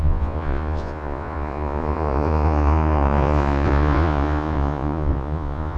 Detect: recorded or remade remade